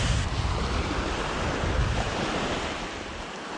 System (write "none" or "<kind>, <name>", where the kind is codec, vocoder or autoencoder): none